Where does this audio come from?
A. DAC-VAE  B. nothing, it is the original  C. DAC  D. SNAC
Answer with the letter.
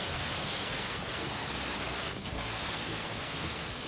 D